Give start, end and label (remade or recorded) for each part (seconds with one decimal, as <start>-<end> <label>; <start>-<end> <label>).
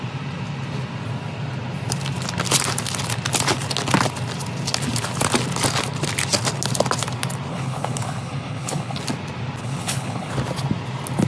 0.0-7.5 recorded; 7.5-9.0 remade; 9.0-9.6 recorded; 9.6-10.3 remade; 10.3-11.3 recorded